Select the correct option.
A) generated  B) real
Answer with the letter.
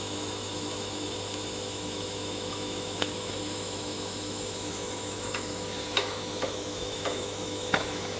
A